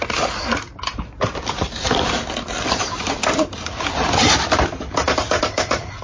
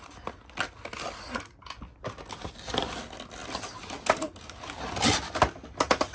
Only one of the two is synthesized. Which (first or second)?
first